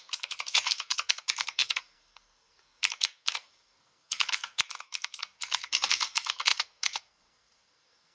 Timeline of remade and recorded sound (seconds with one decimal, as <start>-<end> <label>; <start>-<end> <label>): 0.0-8.1 remade